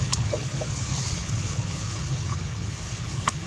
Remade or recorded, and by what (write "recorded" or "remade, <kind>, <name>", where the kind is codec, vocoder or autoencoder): remade, codec, HILCodec